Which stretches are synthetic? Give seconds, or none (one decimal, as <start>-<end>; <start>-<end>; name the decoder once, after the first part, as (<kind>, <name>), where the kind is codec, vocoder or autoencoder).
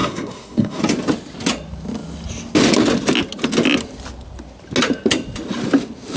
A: 0.0-0.8 (codec, SNAC)